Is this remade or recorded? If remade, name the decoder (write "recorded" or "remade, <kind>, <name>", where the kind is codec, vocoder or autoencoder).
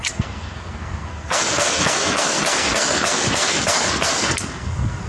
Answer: remade, codec, SNAC